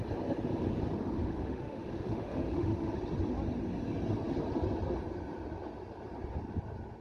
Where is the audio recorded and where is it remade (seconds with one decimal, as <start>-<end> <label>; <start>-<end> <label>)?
0.0-1.2 recorded; 1.2-2.9 remade; 2.9-7.0 recorded